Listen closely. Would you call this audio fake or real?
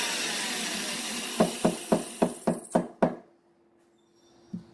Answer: real